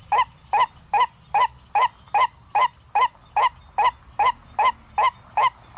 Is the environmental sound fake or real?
real